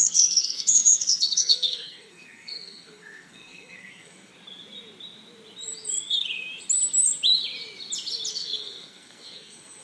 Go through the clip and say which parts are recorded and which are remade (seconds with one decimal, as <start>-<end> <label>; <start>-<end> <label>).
0.0-4.3 remade; 4.3-8.3 recorded; 8.3-9.8 remade